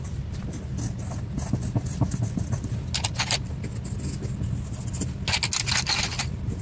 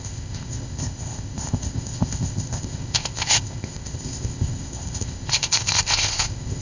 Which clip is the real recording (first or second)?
first